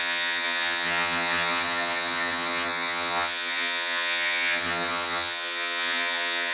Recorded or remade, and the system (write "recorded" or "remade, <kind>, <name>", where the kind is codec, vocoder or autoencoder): remade, vocoder, HiFi-GAN